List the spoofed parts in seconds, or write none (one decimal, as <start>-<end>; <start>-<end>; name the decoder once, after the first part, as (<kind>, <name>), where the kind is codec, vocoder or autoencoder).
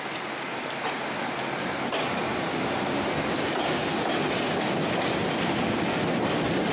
none